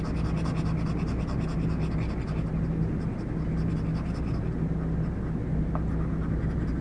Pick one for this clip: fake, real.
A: real